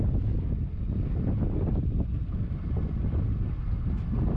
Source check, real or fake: real